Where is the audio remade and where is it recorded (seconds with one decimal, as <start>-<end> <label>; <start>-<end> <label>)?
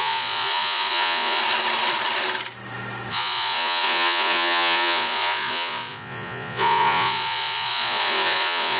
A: 0.0-1.4 remade; 1.4-3.1 recorded; 3.1-8.8 remade